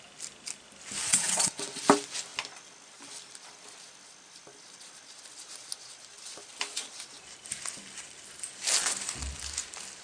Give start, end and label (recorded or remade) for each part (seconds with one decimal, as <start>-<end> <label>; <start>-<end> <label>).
0.0-1.1 recorded; 1.1-1.8 remade; 1.8-10.0 recorded